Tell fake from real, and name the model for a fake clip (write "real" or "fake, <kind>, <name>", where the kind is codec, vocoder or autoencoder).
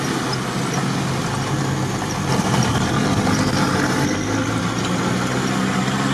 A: real